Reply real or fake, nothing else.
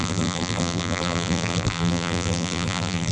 fake